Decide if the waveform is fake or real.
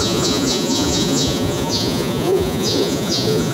fake